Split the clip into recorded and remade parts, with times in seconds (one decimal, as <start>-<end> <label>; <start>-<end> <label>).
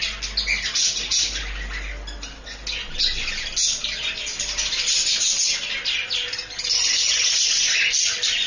0.0-8.5 recorded